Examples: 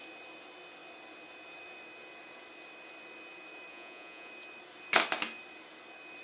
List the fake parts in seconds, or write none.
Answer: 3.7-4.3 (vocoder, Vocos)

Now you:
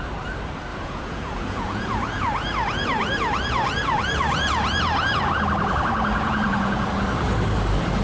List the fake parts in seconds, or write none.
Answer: 0.7-5.4 (vocoder, Vocos); 6.1-6.9